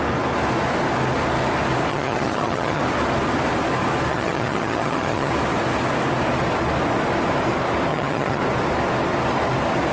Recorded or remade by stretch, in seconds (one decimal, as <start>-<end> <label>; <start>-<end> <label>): 0.0-1.9 recorded; 1.9-2.8 remade; 2.8-4.1 recorded; 4.1-5.3 remade; 5.3-7.9 recorded; 7.9-8.4 remade; 8.4-9.9 recorded